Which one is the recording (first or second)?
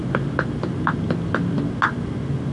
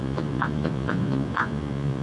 first